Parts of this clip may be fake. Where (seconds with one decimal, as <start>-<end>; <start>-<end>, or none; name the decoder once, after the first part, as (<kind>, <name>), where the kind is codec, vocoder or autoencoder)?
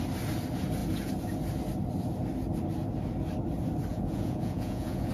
3.9-5.1 (vocoder, Vocos)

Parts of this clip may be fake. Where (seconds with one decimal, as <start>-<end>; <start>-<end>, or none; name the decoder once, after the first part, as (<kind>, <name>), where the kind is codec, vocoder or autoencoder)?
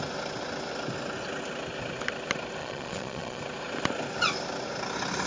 2.6-3.4 (vocoder, Vocos)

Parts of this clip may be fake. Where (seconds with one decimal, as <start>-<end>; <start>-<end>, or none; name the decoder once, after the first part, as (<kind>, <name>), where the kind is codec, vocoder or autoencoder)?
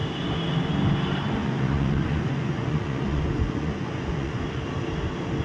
1.4-4.6 (vocoder, Vocos)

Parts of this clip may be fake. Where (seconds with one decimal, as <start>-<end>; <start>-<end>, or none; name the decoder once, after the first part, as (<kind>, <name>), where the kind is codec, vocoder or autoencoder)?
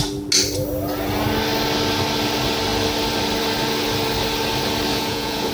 4.9-5.5 (vocoder, Vocos)